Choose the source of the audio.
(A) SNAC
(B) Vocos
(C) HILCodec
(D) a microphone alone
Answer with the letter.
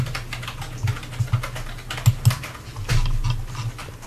D